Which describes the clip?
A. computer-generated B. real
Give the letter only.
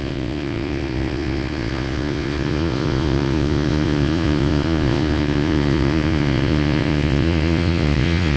A